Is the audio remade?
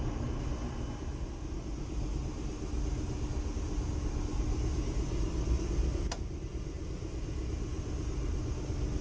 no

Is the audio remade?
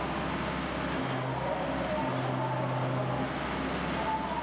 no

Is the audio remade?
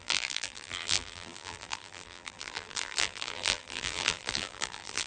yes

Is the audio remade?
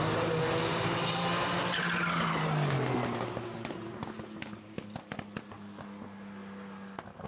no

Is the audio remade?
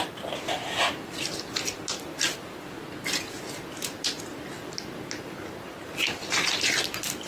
no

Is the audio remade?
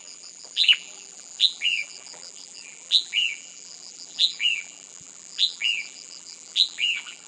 yes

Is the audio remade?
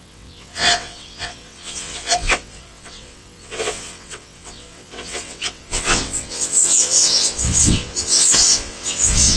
yes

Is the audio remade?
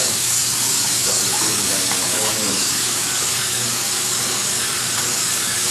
yes